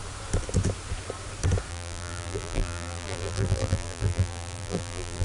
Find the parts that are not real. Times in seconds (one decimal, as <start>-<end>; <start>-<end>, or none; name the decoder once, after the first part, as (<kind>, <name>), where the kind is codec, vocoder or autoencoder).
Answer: 1.7-5.2 (vocoder, BigVGAN v2)

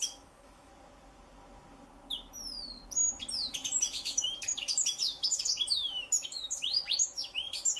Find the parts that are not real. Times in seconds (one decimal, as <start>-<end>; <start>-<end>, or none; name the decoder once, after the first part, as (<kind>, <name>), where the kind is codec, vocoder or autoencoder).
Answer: 0.0-0.7 (autoencoder, DAC-VAE); 3.5-7.8

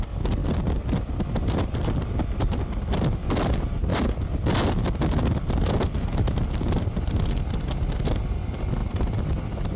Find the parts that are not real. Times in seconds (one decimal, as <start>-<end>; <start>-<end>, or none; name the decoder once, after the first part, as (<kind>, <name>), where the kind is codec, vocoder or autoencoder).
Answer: 0.4-1.3 (vocoder, BigVGAN v2); 3.9-4.5; 8.8-9.8